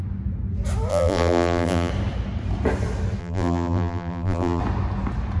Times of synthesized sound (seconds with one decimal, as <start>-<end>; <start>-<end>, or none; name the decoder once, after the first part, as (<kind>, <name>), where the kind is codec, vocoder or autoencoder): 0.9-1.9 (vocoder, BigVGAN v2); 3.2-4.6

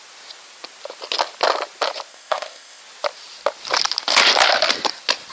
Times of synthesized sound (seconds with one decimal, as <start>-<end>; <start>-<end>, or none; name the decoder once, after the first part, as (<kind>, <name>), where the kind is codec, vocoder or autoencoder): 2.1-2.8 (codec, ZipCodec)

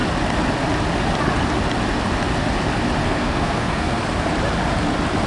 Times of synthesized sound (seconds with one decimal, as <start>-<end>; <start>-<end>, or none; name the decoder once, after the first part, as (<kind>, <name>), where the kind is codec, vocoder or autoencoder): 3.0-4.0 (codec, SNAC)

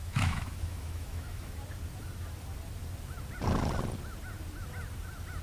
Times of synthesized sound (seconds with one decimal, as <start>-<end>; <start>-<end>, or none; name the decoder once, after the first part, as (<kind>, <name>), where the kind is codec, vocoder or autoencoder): 0.0-1.5 (autoencoder, DAC-VAE)

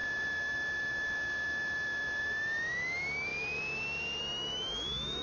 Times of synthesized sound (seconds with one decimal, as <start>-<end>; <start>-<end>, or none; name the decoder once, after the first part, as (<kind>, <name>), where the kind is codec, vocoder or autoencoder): 0.0-3.3 (autoencoder, DAC-VAE); 4.2-5.2